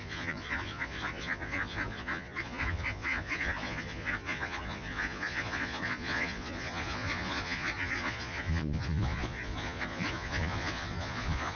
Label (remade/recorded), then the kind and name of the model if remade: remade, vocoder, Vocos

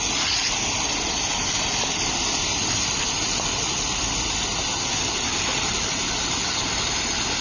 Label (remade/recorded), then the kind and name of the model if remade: recorded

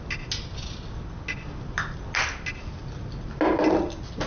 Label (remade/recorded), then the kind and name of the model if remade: recorded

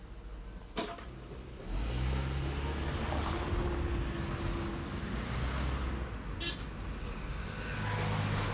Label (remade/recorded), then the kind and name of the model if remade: recorded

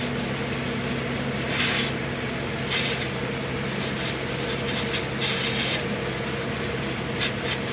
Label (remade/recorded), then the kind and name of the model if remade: recorded